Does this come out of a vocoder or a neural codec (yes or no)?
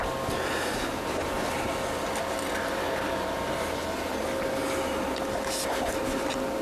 no